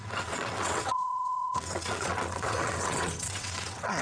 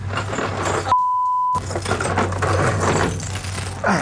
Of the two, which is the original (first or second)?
second